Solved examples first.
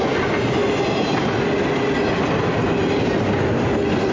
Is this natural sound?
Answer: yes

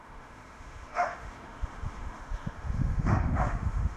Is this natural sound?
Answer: no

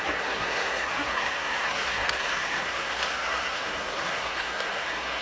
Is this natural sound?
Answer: no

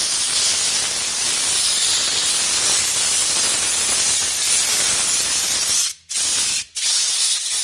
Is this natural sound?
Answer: yes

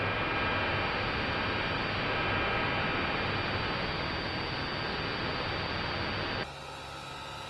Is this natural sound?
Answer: yes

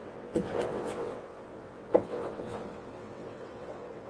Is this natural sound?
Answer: no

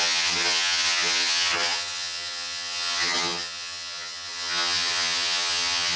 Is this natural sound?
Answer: no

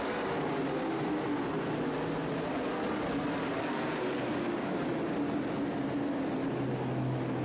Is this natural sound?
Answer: yes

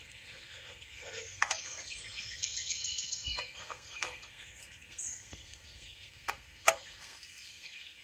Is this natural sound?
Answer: no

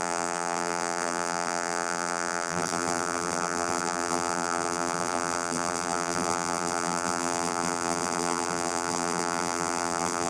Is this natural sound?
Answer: no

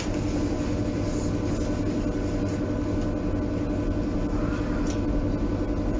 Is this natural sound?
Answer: yes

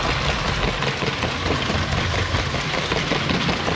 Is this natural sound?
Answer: yes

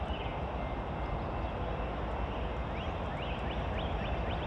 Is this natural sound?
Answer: yes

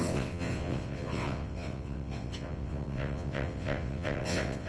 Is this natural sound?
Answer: no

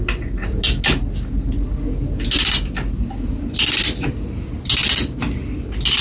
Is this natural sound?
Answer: yes